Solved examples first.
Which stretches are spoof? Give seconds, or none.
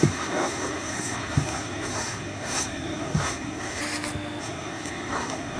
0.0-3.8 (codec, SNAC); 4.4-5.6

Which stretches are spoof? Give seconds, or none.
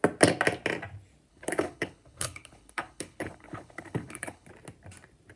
1.3-4.5 (codec, HILCodec)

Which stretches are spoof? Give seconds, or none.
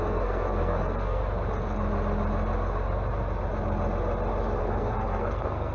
0.0-1.2 (codec, SNAC); 4.6-5.7